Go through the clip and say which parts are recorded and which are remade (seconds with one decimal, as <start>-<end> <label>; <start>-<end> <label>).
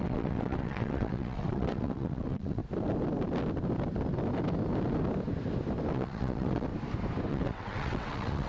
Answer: 0.0-2.6 remade; 2.6-5.9 recorded; 5.9-6.7 remade; 6.7-7.3 recorded; 7.3-8.5 remade